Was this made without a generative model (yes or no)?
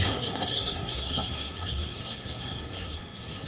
no